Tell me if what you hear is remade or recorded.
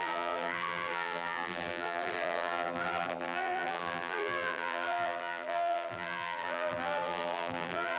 remade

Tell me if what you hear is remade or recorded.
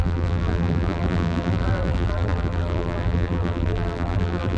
remade